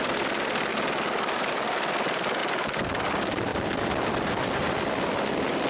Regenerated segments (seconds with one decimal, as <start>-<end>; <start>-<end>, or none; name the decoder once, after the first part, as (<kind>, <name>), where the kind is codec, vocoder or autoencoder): none